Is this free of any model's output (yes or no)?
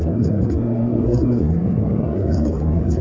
no